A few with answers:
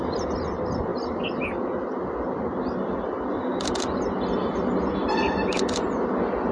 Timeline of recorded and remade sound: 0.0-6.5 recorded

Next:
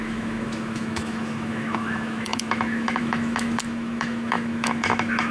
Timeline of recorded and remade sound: 0.0-5.3 remade

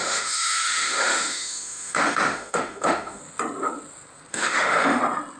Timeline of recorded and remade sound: 0.0-3.2 remade; 3.2-4.3 recorded; 4.3-5.0 remade; 5.0-5.4 recorded